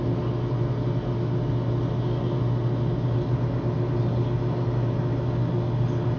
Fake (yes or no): no